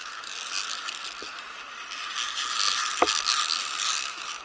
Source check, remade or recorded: recorded